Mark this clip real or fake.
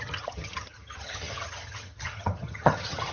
fake